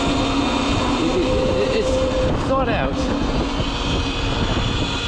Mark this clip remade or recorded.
recorded